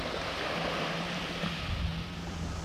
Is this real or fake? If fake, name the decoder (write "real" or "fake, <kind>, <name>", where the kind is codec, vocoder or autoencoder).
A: real